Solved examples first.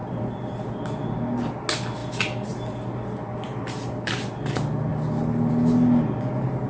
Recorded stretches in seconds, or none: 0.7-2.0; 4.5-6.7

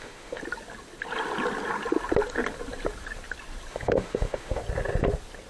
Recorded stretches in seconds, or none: 0.4-3.7; 4.6-5.5

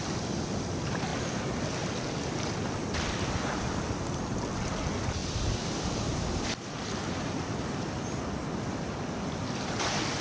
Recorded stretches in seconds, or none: 0.0-10.2

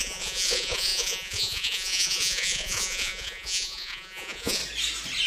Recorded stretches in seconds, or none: 4.6-5.3

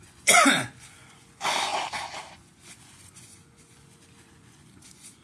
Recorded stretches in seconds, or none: 1.7-2.3

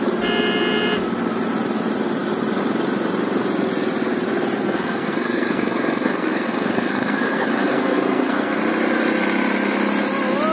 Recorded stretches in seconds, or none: 0.0-4.6; 8.6-10.5